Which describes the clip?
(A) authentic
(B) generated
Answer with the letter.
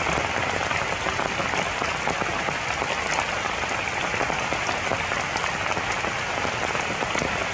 A